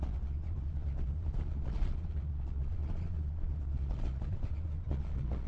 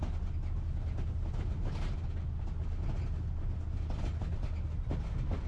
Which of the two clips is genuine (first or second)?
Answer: second